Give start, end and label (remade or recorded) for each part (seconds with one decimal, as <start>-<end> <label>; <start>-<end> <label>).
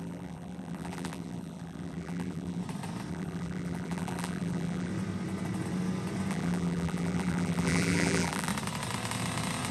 0.0-2.6 remade; 2.6-3.1 recorded; 3.1-4.9 remade; 4.9-6.3 recorded; 6.3-8.5 remade; 8.5-9.7 recorded